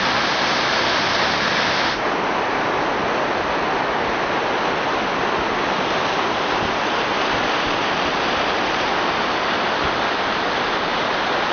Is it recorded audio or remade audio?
recorded